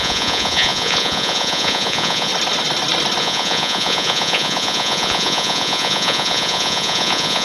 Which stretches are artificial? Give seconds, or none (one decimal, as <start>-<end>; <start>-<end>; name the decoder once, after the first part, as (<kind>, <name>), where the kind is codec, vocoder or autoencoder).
0.0-2.3 (vocoder, Vocos); 3.2-7.4